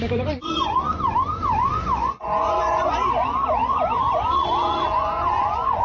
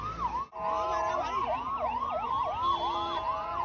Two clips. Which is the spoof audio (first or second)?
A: first